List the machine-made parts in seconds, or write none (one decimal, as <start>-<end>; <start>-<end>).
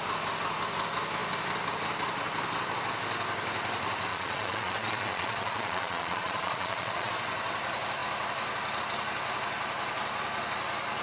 4.1-7.1